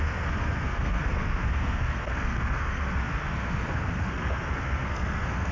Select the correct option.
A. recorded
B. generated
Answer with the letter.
B